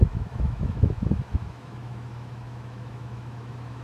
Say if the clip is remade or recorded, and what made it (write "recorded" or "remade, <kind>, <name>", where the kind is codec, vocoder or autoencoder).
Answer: remade, autoencoder, DAC-VAE